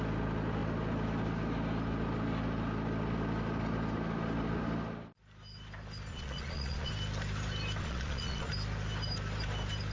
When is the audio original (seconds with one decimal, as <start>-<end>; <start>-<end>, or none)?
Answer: 0.0-6.1; 6.9-7.8; 8.5-9.9